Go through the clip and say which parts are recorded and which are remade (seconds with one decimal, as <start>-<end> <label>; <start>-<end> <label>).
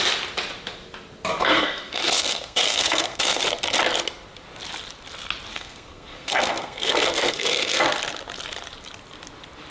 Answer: 0.0-1.4 recorded; 1.4-3.4 remade; 3.4-5.5 recorded; 5.5-7.8 remade; 7.8-9.7 recorded